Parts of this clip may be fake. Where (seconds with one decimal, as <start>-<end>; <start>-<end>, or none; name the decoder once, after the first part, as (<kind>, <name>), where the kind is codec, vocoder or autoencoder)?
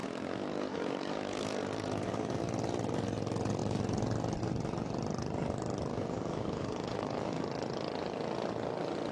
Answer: 0.0-2.4 (codec, DAC); 5.9-7.4